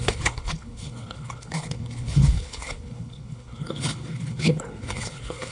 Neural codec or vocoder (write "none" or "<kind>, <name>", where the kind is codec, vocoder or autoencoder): codec, HILCodec